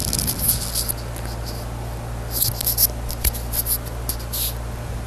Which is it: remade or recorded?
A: recorded